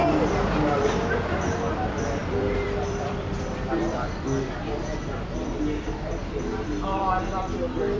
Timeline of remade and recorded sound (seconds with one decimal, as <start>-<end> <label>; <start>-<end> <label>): 0.0-1.7 recorded; 1.7-8.0 remade